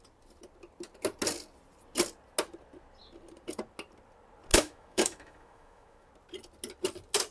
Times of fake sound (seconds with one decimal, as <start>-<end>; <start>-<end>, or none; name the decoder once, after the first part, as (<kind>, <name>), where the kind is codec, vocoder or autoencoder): 4.5-6.1 (autoencoder, DAC-VAE)

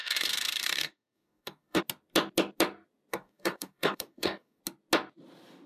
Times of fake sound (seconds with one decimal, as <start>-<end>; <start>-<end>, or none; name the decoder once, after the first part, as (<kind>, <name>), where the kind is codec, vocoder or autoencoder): 0.0-1.8 (codec, DAC); 3.1-4.6

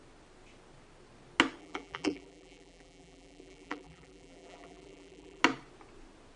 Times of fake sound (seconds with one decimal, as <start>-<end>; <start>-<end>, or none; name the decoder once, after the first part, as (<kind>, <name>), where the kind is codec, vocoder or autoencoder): 1.6-5.4 (vocoder, BigVGAN v2)

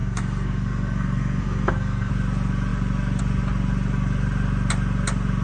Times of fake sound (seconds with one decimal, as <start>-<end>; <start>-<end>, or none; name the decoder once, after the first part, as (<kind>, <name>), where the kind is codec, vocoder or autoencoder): 0.0-2.1 (codec, SNAC)

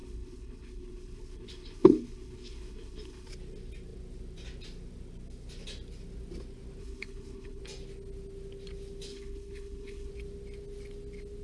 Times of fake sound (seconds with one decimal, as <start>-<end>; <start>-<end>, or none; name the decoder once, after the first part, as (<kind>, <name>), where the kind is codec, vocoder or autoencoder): 0.0-3.3 (codec, HILCodec); 6.8-7.6; 9.1-10.1

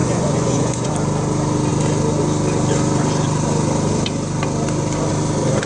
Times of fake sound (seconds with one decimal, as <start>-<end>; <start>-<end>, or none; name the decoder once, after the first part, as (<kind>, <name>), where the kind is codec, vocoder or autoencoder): 0.0-0.9 (vocoder, Vocos)

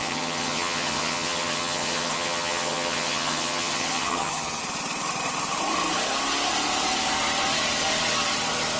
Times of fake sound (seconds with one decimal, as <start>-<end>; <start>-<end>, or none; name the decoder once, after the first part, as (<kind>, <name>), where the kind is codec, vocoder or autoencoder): 0.0-4.6 (vocoder, HiFi-GAN)